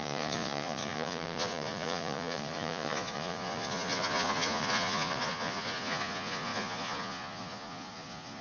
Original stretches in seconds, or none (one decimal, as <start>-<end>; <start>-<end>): none